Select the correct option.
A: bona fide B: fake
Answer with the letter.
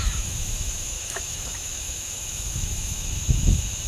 B